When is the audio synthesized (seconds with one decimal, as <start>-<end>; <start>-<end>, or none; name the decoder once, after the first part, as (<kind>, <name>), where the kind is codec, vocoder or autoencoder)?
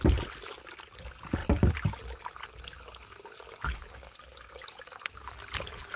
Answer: none